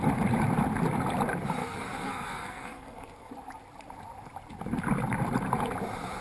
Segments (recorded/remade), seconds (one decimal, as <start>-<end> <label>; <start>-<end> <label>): 0.0-1.6 recorded; 1.6-3.3 remade; 3.3-6.2 recorded